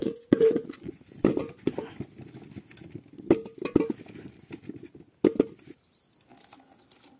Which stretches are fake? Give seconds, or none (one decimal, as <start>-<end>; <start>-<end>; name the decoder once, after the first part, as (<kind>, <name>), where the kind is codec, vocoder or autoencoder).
0.0-1.0 (vocoder, Vocos); 1.4-2.0